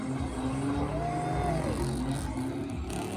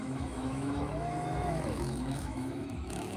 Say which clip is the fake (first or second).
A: second